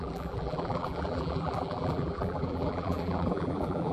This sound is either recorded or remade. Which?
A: remade